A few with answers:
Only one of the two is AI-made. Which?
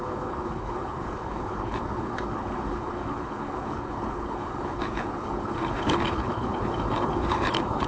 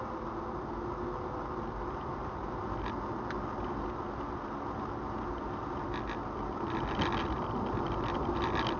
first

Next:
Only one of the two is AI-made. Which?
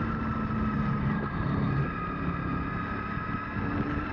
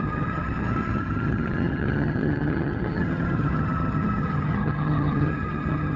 second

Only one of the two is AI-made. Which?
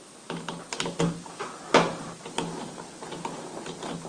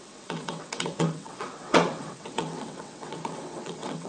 second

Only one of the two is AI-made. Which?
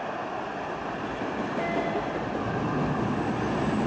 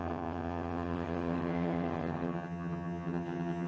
second